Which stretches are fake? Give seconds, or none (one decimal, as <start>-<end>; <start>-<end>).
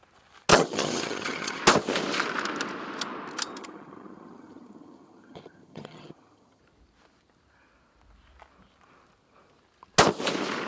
0.5-1.6; 3.6-6.6